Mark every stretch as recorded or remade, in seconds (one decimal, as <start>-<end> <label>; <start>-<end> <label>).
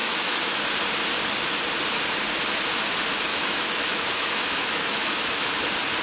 0.0-0.6 remade; 0.6-3.3 recorded; 3.3-5.5 remade; 5.5-6.0 recorded